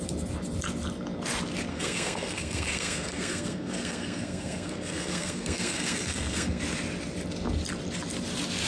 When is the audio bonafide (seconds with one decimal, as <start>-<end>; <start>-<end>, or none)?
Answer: 0.0-1.7; 6.6-8.7